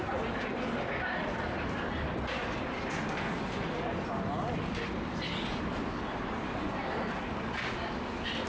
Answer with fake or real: real